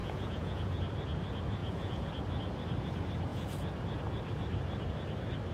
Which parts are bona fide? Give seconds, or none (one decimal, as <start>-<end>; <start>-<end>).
0.8-1.6; 2.1-3.3; 3.8-5.5